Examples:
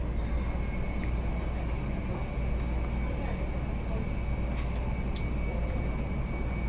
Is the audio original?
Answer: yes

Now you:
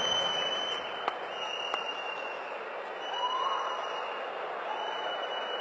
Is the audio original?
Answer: yes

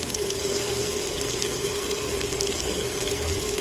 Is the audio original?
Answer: no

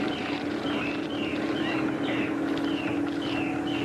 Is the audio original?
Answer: yes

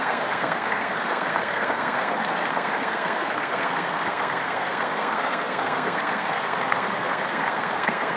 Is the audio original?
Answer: no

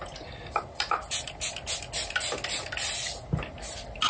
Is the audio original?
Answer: yes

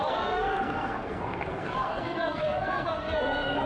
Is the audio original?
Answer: no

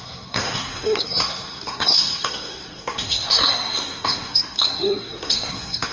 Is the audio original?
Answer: no